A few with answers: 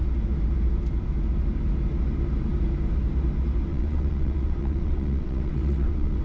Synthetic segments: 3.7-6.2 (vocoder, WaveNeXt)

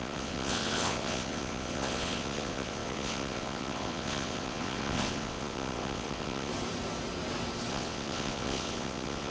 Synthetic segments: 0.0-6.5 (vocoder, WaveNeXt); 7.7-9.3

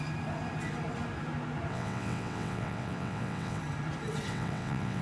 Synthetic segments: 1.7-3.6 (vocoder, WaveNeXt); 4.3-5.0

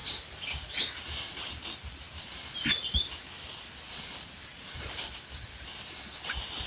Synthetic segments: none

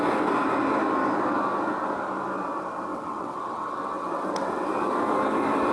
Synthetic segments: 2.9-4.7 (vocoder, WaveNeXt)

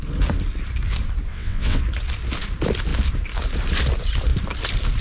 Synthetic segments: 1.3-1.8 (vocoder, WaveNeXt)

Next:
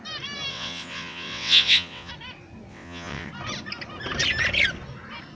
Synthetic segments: 0.5-2.1 (vocoder, WaveNeXt); 2.7-3.3

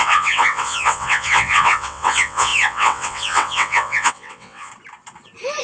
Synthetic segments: 0.0-4.7 (vocoder, WaveNeXt)